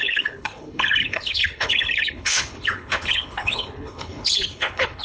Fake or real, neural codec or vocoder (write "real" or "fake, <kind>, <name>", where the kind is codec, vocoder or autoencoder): fake, codec, HILCodec